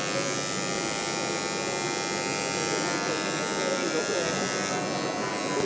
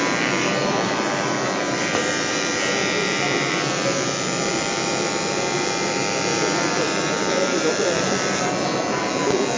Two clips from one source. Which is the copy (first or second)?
second